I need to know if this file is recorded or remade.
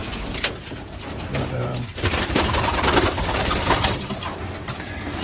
remade